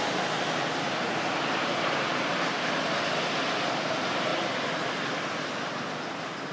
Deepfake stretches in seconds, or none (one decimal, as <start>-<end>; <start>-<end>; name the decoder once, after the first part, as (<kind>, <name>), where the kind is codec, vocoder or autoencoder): none

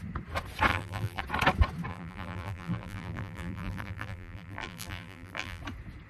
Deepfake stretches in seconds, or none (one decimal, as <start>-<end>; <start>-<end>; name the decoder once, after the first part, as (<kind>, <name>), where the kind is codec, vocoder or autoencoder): 0.7-1.2 (vocoder, BigVGAN v2); 1.9-5.6

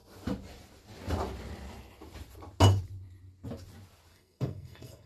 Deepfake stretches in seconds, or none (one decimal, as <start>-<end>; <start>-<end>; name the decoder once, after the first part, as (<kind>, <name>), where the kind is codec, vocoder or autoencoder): 4.1-5.1 (codec, SNAC)

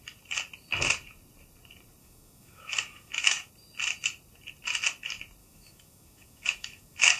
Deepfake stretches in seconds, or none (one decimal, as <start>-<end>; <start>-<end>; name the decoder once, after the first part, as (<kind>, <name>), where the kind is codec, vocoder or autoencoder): 2.0-3.5 (autoencoder, DAC-VAE); 5.4-7.2